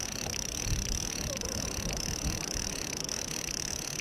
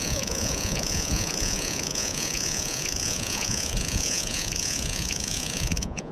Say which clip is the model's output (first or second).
second